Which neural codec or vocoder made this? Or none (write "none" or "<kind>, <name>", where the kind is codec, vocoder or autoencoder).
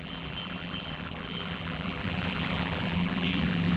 vocoder, BigVGAN v2